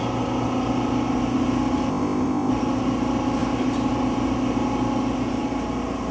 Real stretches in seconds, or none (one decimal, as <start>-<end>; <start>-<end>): 0.0-1.9; 2.5-6.1